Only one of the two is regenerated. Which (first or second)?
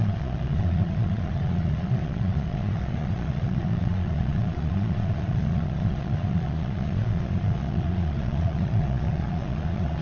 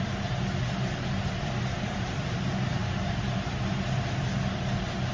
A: first